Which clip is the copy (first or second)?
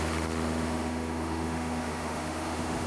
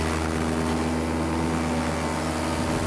first